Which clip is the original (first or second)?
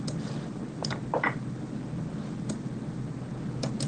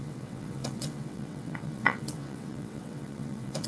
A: first